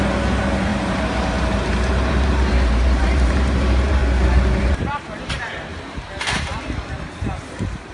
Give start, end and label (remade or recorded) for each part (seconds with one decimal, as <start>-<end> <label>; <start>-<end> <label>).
0.0-4.0 remade; 4.0-4.7 recorded; 4.7-5.7 remade; 5.7-7.3 recorded; 7.3-7.9 remade